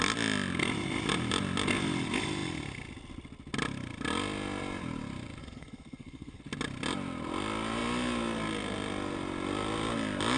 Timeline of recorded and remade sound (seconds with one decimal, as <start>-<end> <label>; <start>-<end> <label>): 0.0-5.4 recorded; 5.4-6.4 remade; 6.4-10.4 recorded